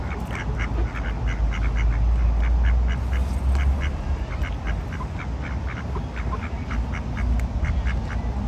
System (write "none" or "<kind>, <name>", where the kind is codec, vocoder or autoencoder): none